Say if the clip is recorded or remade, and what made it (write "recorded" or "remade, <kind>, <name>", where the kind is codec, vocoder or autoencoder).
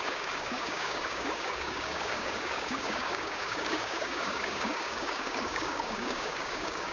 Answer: remade, codec, DAC